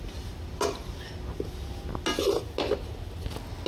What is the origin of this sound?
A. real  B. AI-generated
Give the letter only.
A